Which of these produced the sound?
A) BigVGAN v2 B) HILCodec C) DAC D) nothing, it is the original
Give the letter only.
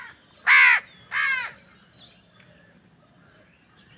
D